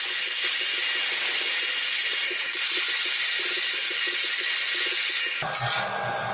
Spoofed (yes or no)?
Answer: no